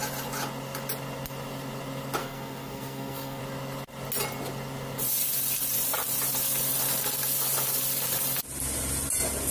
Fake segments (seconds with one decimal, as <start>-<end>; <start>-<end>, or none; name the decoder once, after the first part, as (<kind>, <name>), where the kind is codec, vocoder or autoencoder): 2.2-3.4 (codec, SNAC)